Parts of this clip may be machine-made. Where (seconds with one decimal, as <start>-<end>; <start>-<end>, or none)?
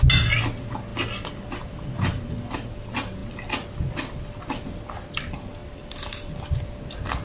0.9-2.7; 5.6-6.3